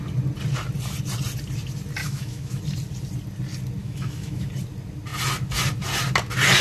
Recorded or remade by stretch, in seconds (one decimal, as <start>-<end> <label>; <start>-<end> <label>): 0.0-2.0 recorded; 2.0-2.6 remade; 2.6-3.8 recorded; 3.8-4.5 remade; 4.5-6.6 recorded